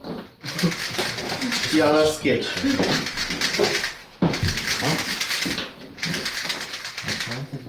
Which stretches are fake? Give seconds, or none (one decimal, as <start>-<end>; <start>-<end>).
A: 4.0-4.8